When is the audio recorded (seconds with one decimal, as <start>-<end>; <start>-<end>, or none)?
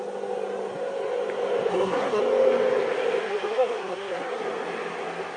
0.0-1.7; 2.2-3.2; 4.4-5.4